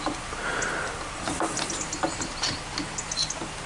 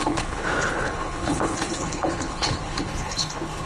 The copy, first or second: second